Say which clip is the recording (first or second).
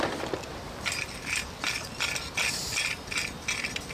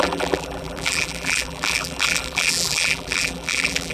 first